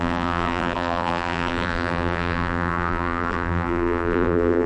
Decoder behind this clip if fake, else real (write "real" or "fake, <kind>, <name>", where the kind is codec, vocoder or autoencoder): fake, vocoder, BigVGAN v2